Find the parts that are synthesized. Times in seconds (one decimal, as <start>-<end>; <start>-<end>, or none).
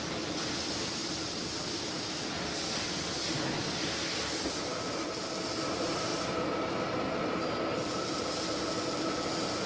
none